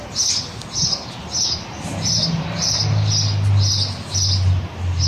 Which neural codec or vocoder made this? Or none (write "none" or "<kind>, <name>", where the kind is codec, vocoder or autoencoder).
none